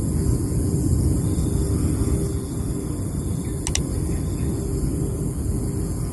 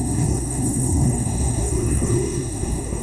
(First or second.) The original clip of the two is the first